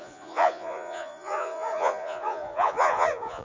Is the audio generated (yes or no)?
yes